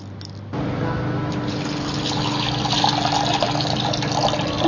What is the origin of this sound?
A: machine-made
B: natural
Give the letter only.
B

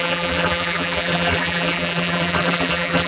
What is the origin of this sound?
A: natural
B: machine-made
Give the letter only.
B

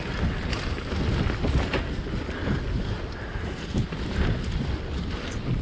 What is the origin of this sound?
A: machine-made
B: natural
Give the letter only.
B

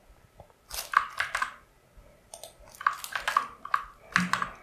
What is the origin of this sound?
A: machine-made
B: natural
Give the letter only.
B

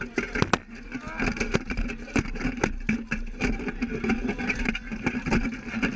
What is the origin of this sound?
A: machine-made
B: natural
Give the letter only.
B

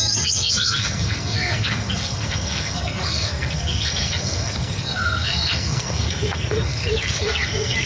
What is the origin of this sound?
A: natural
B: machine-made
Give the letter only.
B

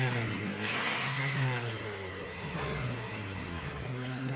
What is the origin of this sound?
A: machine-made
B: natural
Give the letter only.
A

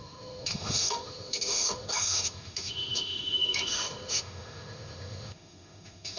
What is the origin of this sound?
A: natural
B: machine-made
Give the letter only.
B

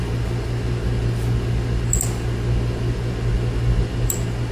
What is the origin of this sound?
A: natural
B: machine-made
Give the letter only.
A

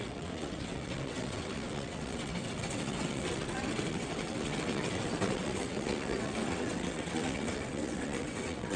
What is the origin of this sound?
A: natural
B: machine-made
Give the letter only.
B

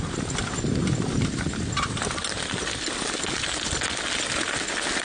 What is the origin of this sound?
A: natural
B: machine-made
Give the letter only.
A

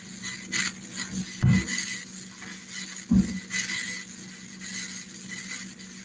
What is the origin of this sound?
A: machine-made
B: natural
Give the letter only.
B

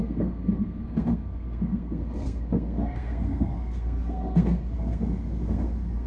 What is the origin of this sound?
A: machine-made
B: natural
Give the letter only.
A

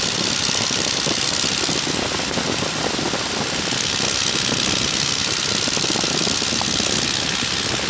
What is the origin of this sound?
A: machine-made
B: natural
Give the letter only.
B